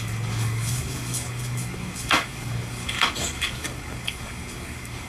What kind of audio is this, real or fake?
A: fake